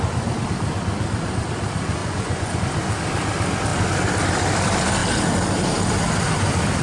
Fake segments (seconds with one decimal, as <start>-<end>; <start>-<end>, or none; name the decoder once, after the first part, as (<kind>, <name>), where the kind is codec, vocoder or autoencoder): 2.0-2.6 (vocoder, Vocos)